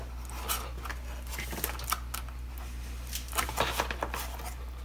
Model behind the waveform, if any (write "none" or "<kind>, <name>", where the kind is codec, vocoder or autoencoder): none